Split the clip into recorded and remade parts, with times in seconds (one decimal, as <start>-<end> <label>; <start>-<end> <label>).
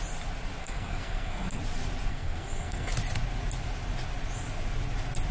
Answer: 0.0-0.6 recorded; 0.6-1.6 remade; 1.6-2.1 recorded; 2.1-2.9 remade; 2.9-5.3 recorded